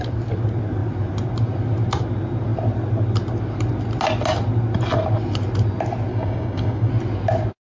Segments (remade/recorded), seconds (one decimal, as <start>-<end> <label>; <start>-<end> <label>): 0.0-6.1 recorded; 6.1-6.9 remade; 6.9-7.7 recorded